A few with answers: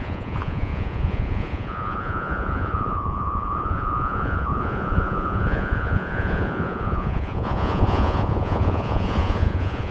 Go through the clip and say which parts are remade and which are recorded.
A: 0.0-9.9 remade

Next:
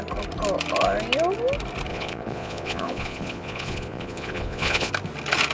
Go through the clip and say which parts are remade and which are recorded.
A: 0.0-1.9 recorded; 1.9-4.9 remade; 4.9-5.5 recorded

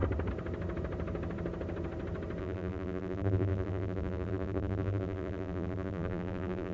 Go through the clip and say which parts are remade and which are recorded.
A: 0.0-2.4 recorded; 2.4-6.7 remade

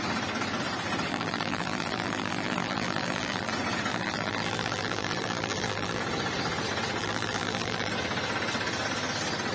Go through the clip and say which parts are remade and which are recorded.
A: 0.0-1.1 recorded; 1.1-3.5 remade; 3.5-3.9 recorded; 3.9-6.0 remade; 6.0-7.0 recorded; 7.0-7.9 remade; 7.9-9.5 recorded

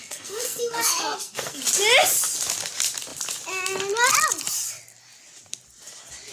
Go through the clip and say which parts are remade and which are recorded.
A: 0.0-1.6 remade; 1.6-6.3 recorded

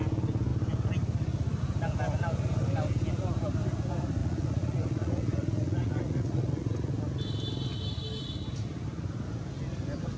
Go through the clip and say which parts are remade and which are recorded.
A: 0.0-4.2 recorded; 4.2-6.9 remade; 6.9-10.2 recorded

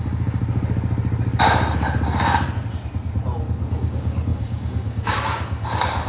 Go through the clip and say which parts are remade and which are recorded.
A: 0.0-0.4 remade; 0.4-3.7 recorded; 3.7-6.1 remade

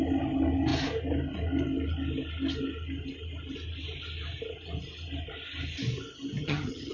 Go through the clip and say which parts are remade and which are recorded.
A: 0.0-6.4 recorded; 6.4-6.9 remade